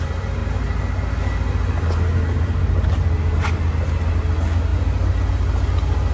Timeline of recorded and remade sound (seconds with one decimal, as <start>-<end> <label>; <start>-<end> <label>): 0.0-6.1 recorded